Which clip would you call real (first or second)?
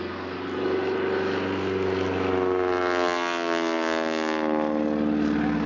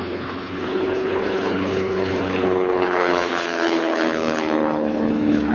first